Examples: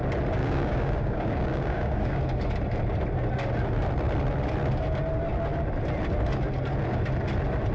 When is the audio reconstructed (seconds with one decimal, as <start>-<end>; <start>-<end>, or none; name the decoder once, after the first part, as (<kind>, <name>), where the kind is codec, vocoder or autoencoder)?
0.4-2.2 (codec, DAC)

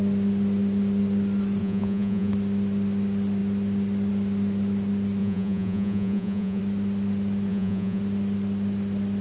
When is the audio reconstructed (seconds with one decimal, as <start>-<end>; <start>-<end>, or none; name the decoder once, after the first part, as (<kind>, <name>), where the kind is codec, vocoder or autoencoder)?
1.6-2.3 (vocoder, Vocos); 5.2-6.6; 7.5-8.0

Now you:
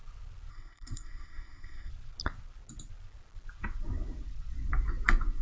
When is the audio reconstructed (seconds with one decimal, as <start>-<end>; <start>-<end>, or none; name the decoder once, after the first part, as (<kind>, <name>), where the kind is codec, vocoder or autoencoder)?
0.5-1.9 (codec, SNAC)